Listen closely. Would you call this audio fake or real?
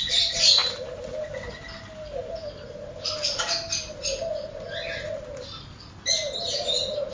real